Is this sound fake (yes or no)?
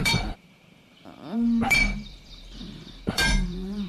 yes